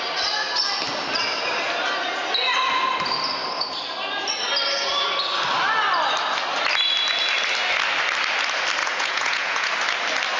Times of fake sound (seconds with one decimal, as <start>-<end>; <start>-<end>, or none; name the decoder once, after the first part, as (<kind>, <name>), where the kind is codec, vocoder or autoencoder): 8.8-9.7 (vocoder, Vocos)